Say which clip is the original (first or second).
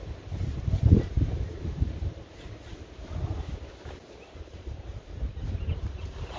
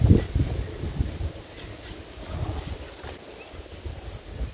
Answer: second